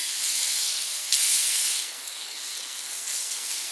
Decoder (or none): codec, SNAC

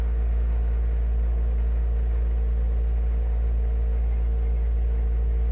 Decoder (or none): none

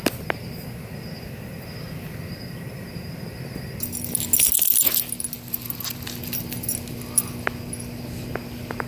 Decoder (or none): none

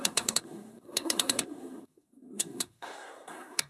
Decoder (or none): codec, SNAC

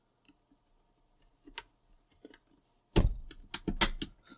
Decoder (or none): none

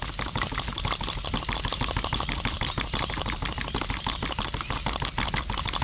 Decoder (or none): none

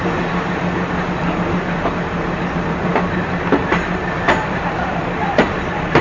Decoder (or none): none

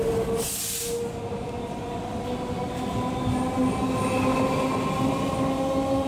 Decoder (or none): none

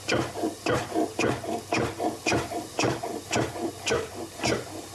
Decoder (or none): none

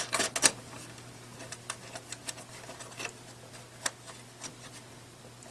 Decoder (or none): none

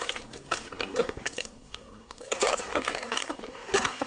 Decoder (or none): codec, SNAC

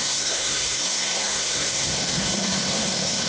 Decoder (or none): codec, SNAC